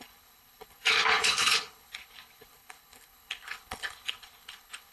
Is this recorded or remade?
remade